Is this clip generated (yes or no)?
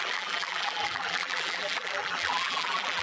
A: yes